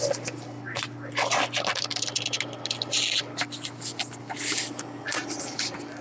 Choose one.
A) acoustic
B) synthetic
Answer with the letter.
A